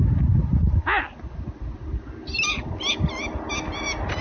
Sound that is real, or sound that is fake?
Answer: real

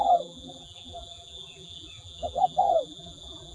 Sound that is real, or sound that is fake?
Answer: fake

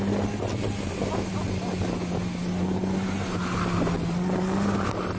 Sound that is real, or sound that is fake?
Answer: real